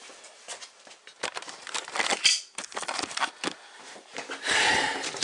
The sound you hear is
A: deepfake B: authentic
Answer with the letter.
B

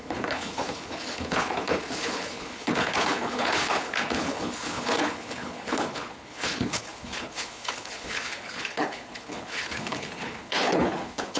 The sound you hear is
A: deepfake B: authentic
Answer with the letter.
A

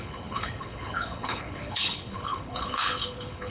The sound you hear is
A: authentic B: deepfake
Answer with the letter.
B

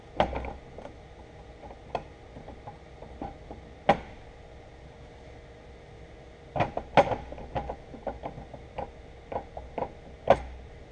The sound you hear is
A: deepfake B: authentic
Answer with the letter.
B